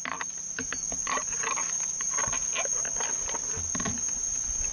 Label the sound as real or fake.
real